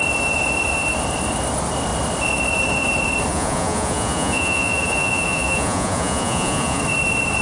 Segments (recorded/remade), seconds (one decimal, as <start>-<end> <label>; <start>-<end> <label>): 0.0-3.3 recorded; 3.3-6.8 remade; 6.8-7.4 recorded